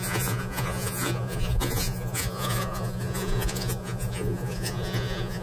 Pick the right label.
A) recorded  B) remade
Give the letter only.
B